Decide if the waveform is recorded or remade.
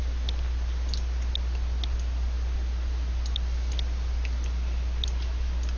recorded